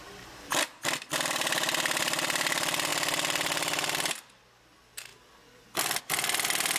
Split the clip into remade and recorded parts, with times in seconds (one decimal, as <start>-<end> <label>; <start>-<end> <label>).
0.0-6.8 recorded